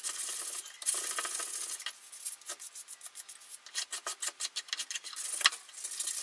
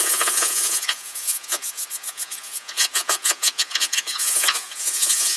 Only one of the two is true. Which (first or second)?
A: first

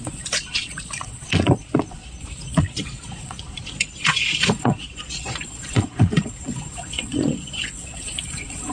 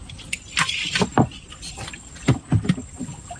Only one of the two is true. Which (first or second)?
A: second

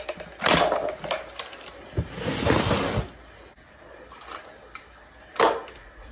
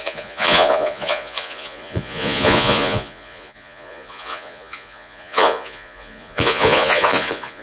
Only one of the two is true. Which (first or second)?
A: first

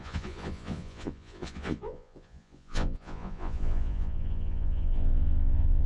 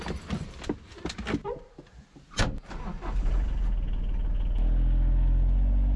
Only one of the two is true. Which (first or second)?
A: second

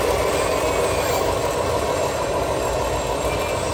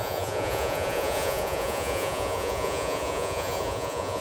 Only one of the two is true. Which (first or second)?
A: first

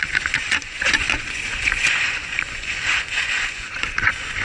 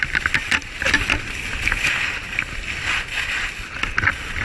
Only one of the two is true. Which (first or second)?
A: second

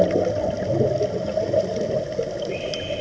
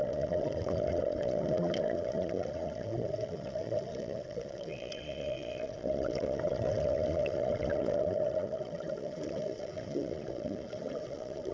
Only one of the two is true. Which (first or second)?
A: first